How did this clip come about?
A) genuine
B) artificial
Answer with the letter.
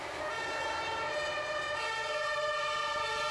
A